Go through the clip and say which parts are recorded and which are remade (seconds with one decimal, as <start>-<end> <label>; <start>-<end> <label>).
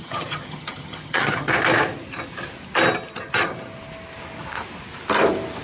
0.0-1.5 remade; 1.5-5.6 recorded